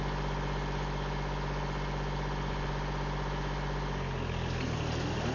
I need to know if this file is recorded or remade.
recorded